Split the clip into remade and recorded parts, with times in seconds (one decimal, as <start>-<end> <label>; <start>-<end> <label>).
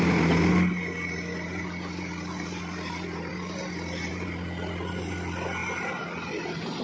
0.0-6.8 recorded